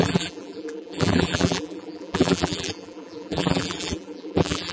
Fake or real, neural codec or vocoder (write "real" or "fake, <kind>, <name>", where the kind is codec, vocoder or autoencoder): fake, vocoder, BigVGAN v2